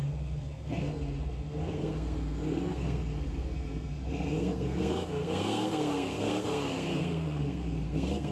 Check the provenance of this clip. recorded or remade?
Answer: remade